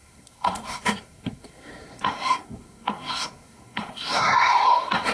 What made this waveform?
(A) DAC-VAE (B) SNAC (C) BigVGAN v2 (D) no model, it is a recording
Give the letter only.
B